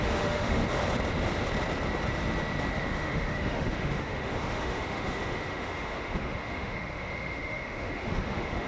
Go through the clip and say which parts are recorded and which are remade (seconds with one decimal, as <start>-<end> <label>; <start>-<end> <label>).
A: 0.0-0.6 remade; 0.6-2.7 recorded; 2.7-8.7 remade